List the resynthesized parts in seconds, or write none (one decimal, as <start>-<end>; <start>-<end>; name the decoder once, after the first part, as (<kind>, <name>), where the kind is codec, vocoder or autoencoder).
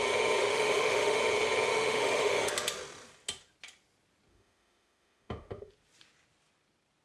0.4-1.2 (autoencoder, DAC-VAE); 1.7-2.5; 4.3-5.7